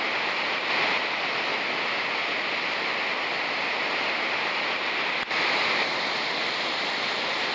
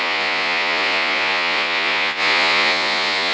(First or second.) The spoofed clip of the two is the second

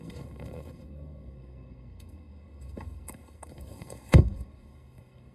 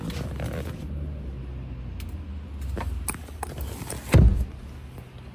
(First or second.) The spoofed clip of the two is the first